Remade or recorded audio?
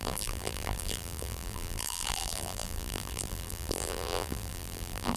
remade